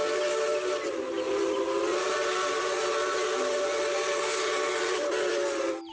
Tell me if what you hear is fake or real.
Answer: real